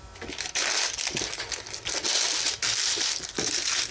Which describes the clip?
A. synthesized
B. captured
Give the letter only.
B